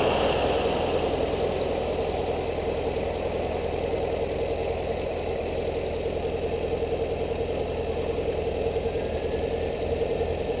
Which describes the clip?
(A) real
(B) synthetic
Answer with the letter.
A